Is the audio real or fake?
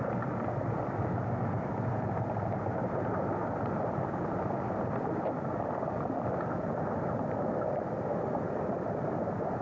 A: real